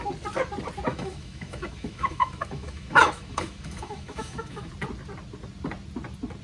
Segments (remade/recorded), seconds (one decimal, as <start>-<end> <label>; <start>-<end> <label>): 0.0-0.9 recorded; 0.9-4.7 remade; 4.7-6.4 recorded